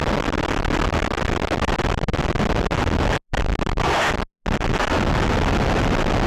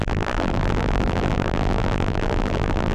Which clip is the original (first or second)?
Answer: first